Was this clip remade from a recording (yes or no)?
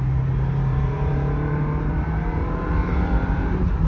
yes